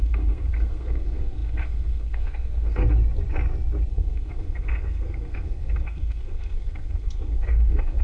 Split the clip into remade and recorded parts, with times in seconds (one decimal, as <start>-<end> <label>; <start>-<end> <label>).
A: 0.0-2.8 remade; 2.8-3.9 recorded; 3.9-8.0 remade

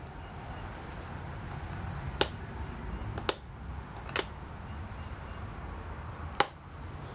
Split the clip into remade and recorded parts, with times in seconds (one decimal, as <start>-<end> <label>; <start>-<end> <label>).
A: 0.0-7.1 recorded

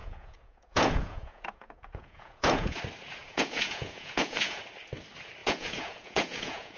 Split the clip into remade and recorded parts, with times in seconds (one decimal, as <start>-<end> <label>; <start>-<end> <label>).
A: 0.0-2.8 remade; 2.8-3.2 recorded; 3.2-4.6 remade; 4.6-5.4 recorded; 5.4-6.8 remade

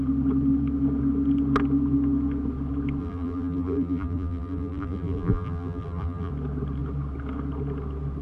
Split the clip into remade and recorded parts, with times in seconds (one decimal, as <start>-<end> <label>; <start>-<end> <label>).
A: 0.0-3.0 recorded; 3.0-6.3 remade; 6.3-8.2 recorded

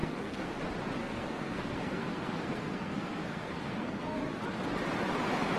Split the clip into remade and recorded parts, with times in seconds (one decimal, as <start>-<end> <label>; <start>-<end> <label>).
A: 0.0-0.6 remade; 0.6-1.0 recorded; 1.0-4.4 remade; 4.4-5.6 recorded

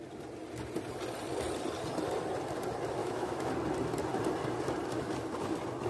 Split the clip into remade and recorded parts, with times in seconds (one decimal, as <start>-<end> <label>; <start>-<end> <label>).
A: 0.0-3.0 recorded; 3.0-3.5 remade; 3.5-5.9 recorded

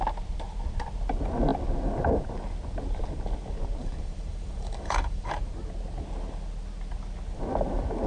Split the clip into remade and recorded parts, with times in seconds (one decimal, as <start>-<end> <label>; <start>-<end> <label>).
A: 0.0-3.8 recorded; 3.8-5.4 remade; 5.4-8.1 recorded